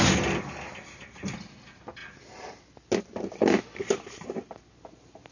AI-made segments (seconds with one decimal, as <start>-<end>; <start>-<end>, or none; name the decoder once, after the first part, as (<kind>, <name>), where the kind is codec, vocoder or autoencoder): none